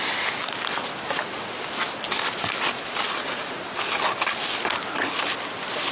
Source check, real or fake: real